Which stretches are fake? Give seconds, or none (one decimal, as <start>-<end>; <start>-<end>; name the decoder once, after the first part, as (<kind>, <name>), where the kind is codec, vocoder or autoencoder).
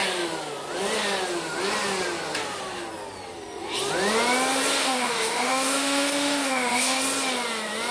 4.8-7.0 (autoencoder, DAC-VAE)